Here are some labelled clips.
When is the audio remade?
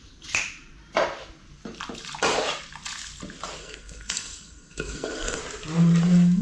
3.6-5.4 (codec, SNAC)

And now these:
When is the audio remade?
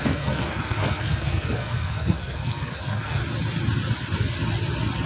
0.0-3.2 (codec, SNAC)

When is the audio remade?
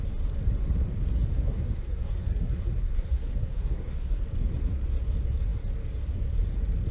1.3-4.2 (codec, SNAC)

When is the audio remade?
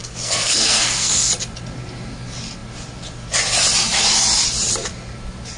0.0-1.3 (codec, SNAC)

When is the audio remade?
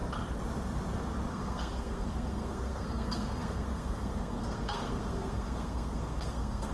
1.3-6.7 (codec, SNAC)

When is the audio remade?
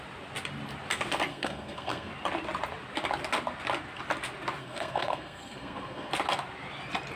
1.3-2.1 (codec, SNAC); 4.6-6.1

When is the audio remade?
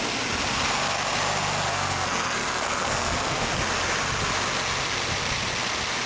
1.7-3.5 (codec, SNAC)